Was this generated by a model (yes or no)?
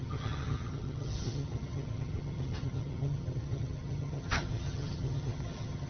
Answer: yes